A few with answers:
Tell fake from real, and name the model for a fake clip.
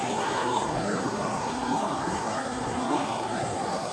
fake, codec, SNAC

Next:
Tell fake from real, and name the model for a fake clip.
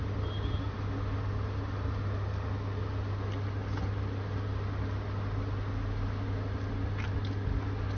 real